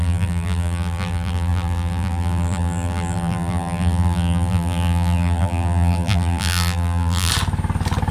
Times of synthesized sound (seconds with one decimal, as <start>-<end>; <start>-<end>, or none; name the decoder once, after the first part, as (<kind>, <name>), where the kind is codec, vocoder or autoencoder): 0.0-7.3 (vocoder, BigVGAN v2)

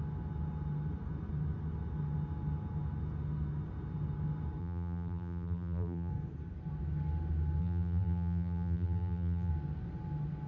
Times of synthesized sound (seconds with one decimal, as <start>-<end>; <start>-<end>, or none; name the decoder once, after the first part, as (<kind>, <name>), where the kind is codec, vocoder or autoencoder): 4.6-6.1 (vocoder, BigVGAN v2); 7.6-9.5

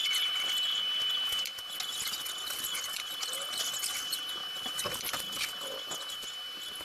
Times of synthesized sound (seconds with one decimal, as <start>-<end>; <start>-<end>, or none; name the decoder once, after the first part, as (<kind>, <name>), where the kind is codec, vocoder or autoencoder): 0.0-0.6 (vocoder, BigVGAN v2); 1.9-3.3; 4.4-5.2

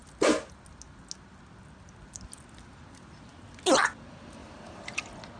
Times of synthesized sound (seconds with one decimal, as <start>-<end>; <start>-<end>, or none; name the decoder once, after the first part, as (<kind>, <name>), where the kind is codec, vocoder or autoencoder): 4.4-5.0 (vocoder, BigVGAN v2)

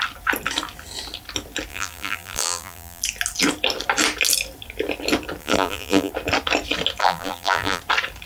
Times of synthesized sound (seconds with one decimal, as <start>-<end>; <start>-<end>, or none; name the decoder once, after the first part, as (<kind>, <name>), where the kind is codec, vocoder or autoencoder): 1.7-3.0 (vocoder, BigVGAN v2); 5.4-6.1; 7.0-7.8

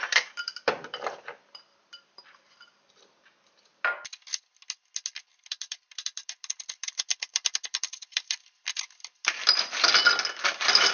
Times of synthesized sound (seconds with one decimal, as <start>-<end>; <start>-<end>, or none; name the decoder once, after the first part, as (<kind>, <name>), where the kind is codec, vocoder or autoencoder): 0.0-3.7 (vocoder, BigVGAN v2); 5.3-10.0